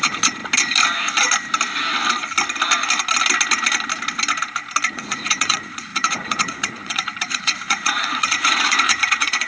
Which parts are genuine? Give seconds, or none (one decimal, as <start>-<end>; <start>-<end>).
0.4-4.9